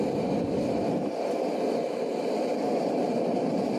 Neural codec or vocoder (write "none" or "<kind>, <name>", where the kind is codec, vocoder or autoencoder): none